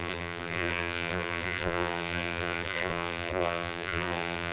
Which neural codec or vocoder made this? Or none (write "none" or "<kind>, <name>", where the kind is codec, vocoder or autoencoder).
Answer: vocoder, BigVGAN v2